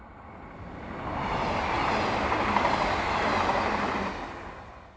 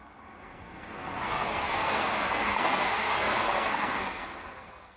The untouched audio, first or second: first